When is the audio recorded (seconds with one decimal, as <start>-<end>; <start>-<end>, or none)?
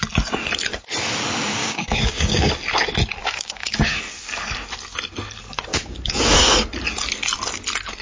0.0-1.6; 2.5-3.2; 4.0-5.7; 6.3-8.0